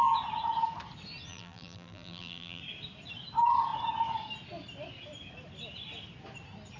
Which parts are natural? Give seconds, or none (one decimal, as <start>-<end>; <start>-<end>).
0.0-1.3; 2.6-6.8